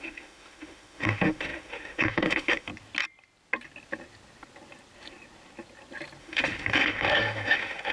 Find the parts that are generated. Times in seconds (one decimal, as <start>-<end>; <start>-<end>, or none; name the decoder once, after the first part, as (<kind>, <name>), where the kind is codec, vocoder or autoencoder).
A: 0.0-2.7 (autoencoder, DAC-VAE); 6.2-7.9